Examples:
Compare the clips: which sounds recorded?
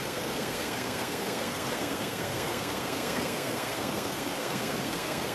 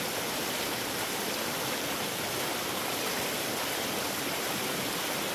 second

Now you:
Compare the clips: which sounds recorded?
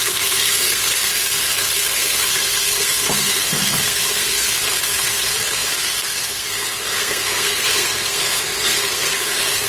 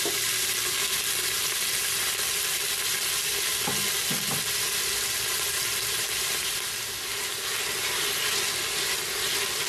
second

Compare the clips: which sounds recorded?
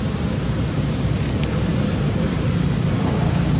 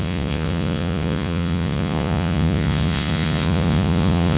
first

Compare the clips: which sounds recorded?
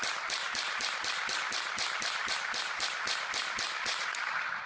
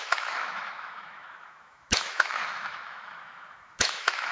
first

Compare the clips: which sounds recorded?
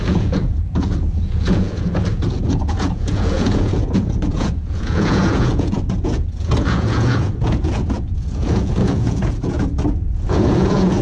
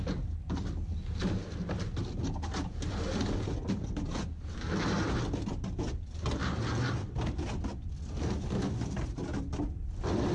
second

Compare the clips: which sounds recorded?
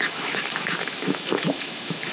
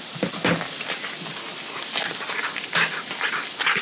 second